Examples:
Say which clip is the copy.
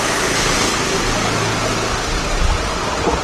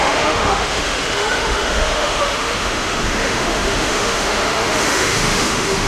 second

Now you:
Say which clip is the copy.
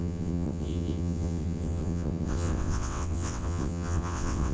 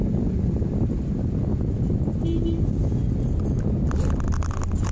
first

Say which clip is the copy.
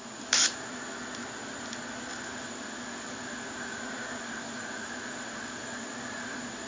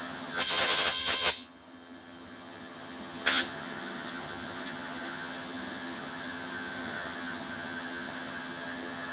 second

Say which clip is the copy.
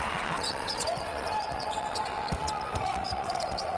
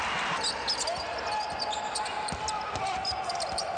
first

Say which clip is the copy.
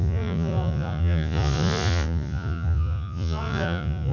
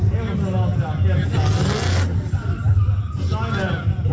first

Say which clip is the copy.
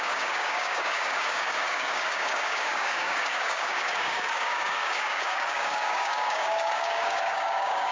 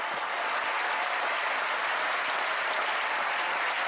first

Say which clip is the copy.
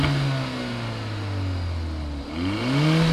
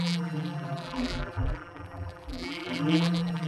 second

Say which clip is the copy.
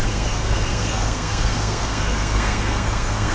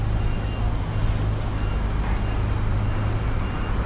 first